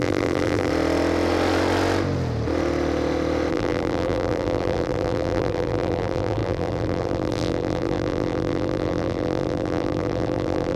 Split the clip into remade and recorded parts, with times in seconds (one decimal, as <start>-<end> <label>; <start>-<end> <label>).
0.0-0.7 remade; 0.7-3.5 recorded; 3.5-10.8 remade